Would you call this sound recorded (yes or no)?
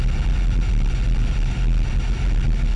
yes